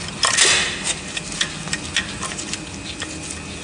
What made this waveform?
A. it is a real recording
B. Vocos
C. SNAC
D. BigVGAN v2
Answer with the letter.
A